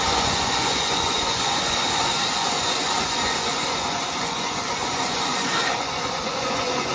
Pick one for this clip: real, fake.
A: fake